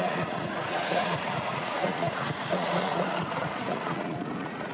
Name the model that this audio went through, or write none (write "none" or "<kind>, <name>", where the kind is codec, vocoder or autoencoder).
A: vocoder, Vocos